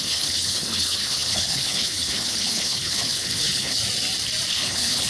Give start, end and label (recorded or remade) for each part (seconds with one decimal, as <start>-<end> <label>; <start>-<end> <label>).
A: 0.0-3.8 remade; 3.8-4.5 recorded; 4.5-5.1 remade